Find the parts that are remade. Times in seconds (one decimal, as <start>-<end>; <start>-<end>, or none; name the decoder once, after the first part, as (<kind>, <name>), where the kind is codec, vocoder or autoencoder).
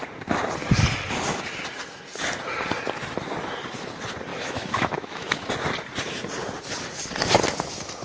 4.3-5.5 (autoencoder, DAC-VAE)